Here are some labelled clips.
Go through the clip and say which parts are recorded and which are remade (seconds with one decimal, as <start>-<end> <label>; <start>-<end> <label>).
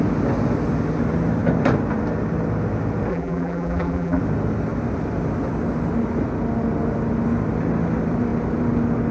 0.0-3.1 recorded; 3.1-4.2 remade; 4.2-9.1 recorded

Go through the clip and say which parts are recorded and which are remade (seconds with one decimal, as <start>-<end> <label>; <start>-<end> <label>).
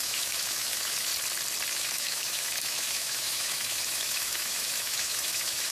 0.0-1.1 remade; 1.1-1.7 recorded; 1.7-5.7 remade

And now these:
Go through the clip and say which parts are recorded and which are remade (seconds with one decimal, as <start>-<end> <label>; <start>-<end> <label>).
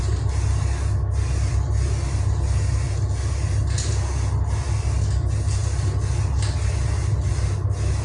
0.0-8.0 recorded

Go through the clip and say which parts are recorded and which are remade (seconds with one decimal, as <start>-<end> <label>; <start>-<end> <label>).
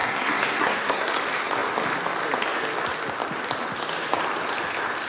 0.0-1.1 remade; 1.1-5.1 recorded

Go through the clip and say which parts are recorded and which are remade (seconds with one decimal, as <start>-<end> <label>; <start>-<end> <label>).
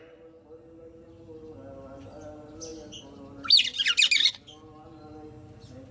0.0-5.9 recorded